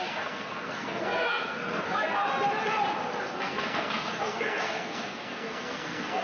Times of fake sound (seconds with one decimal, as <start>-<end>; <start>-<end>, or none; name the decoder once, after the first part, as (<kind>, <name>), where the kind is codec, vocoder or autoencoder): 0.0-2.2 (codec, SNAC); 3.2-6.2